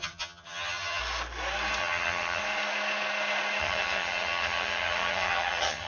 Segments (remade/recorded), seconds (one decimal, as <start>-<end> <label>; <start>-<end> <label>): 0.0-1.0 remade; 1.0-1.8 recorded; 1.8-2.4 remade; 2.4-3.6 recorded; 3.6-5.9 remade

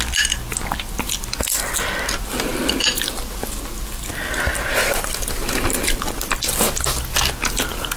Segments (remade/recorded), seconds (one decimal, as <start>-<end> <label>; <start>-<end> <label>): 0.0-4.1 recorded; 4.1-6.9 remade; 6.9-8.0 recorded

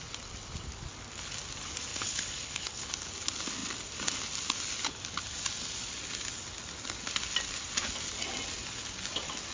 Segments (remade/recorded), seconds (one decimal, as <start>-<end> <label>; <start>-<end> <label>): 0.0-1.9 recorded; 1.9-2.9 remade; 2.9-9.5 recorded

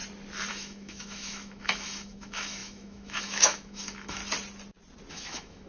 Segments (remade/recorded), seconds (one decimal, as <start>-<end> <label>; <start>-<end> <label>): 0.0-0.5 recorded; 0.5-4.2 remade; 4.2-5.1 recorded; 5.1-5.7 remade